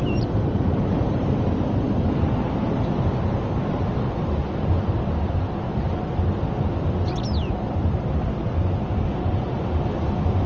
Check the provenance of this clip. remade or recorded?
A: recorded